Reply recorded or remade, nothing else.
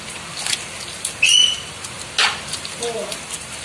recorded